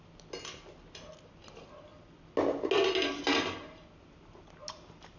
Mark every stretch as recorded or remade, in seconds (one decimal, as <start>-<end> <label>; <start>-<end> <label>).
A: 0.0-5.2 recorded